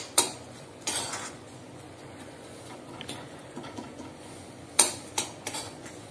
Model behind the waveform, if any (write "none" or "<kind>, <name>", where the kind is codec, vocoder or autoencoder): vocoder, Vocos